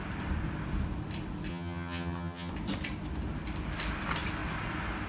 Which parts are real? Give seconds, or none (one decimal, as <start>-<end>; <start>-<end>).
0.0-1.5; 2.5-5.1